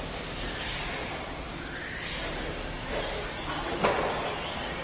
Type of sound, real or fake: real